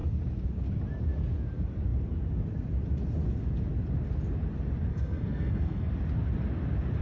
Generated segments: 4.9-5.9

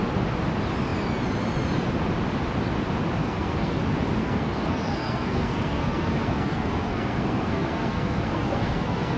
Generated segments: 3.2-3.8; 4.2-9.2

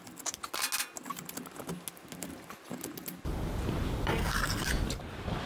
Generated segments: 4.1-4.7

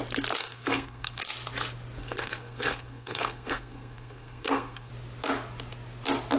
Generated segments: 0.4-1.2; 2.0-4.9

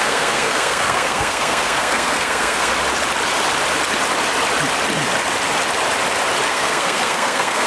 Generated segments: 0.0-2.7; 6.5-7.7

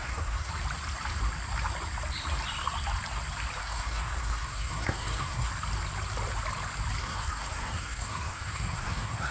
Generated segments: 0.0-0.5; 3.6-5.5; 7.0-9.3